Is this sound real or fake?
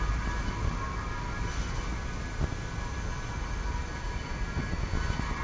real